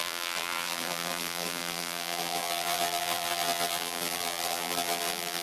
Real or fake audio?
fake